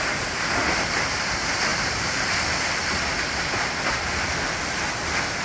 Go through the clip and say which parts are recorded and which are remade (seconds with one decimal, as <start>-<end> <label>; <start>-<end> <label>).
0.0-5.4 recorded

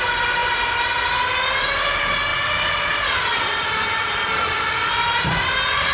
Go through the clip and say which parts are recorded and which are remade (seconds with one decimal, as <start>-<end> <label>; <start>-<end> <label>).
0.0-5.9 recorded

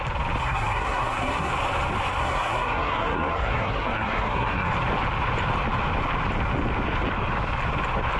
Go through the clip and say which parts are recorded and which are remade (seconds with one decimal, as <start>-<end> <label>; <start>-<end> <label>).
0.0-0.4 recorded; 0.4-1.5 remade; 1.5-2.2 recorded; 2.2-4.7 remade; 4.7-8.2 recorded

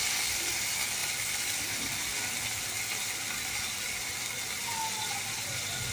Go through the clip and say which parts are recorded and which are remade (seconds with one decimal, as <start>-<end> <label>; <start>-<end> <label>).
0.0-5.9 recorded

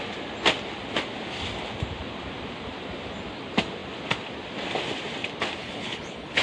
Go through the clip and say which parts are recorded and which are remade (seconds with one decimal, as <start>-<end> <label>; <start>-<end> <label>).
0.0-5.6 recorded; 5.6-6.4 remade

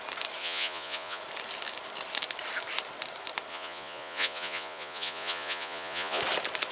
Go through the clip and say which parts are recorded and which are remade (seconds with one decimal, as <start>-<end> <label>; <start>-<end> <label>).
0.0-0.4 recorded; 0.4-1.2 remade; 1.2-3.5 recorded; 3.5-6.2 remade; 6.2-6.7 recorded

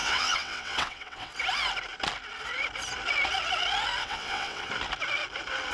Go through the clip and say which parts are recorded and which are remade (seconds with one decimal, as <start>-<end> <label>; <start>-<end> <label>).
0.0-1.3 remade; 1.3-4.0 recorded; 4.0-4.7 remade; 4.7-5.7 recorded

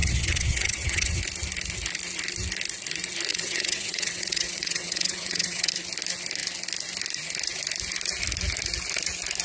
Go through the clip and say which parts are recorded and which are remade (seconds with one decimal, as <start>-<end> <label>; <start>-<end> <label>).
0.0-1.2 remade; 1.2-3.3 recorded; 3.3-5.7 remade; 5.7-9.4 recorded